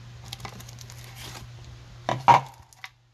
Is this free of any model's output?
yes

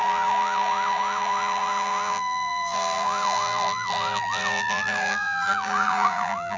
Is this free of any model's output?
no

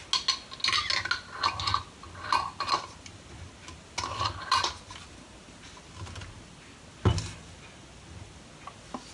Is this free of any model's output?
yes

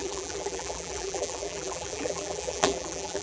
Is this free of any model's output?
no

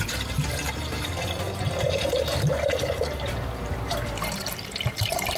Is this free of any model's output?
no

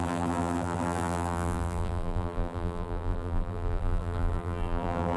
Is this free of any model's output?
no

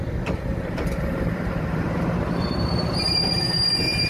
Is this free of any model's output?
no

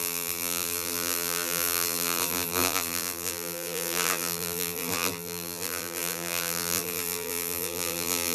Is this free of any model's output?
no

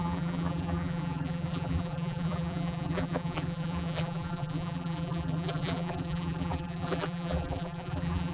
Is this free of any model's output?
no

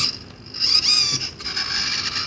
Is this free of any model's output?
yes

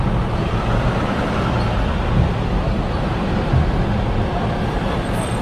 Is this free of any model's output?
yes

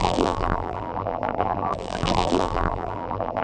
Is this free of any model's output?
no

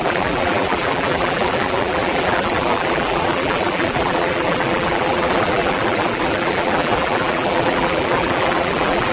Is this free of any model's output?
no